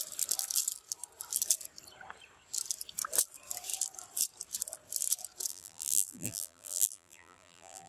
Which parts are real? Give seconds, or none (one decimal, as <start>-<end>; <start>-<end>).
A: 0.0-5.5